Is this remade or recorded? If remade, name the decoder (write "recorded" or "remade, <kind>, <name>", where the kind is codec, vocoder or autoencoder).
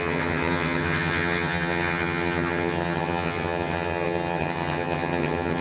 remade, vocoder, HiFi-GAN